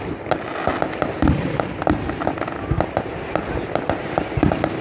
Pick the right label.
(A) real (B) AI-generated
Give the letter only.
A